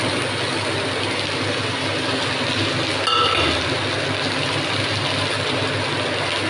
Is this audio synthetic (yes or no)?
no